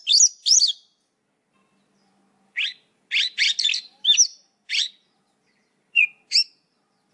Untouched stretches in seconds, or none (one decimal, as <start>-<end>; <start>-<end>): 0.0-7.1